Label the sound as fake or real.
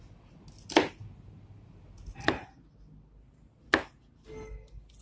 real